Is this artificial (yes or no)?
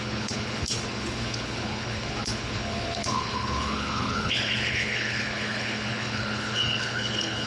yes